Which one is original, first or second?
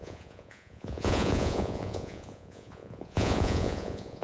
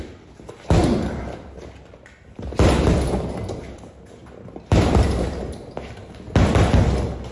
second